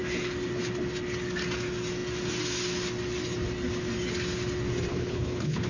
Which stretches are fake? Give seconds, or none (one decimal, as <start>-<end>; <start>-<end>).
4.9-5.7